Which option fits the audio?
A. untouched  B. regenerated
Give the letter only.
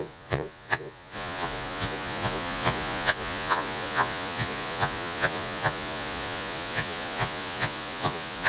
B